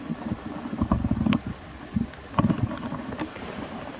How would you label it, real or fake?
real